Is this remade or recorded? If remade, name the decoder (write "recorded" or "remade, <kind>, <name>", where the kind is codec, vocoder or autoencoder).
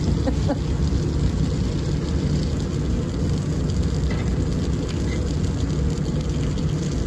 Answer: recorded